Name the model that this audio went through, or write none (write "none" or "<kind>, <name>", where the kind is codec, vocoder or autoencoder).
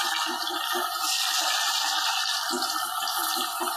none